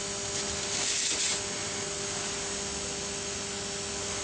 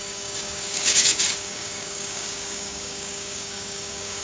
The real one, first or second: first